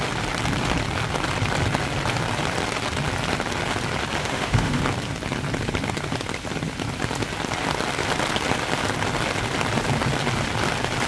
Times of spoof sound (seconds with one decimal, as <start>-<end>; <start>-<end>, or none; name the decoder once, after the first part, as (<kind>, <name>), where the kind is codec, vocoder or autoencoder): 4.2-4.8 (autoencoder, DAC-VAE)